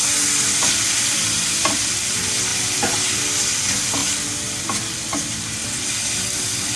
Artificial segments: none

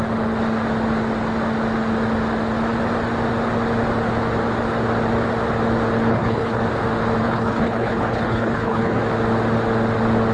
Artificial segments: 6.1-6.6 (codec, HILCodec); 7.2-9.0